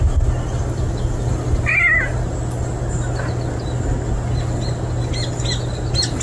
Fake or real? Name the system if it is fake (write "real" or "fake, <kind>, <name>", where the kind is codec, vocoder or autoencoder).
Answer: real